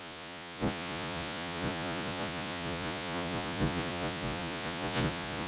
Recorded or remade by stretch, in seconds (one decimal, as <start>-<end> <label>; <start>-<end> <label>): 0.0-5.5 remade

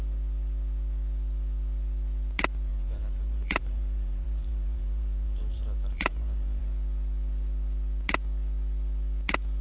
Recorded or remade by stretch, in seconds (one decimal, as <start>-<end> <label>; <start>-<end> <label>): 0.0-2.7 recorded; 2.7-6.6 remade; 6.6-9.6 recorded

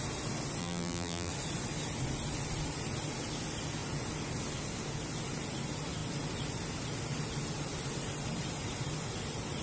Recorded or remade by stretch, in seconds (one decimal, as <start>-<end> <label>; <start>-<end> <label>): 0.0-0.6 recorded; 0.6-1.3 remade; 1.3-9.6 recorded

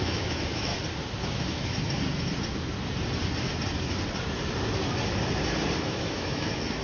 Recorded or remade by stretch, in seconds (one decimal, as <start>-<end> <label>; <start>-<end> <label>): 0.0-0.7 remade; 0.7-1.2 recorded; 1.2-1.7 remade; 1.7-5.8 recorded; 5.8-6.8 remade